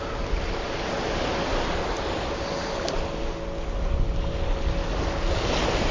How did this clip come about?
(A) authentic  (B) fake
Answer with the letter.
A